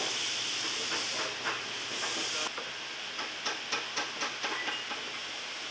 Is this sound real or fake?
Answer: real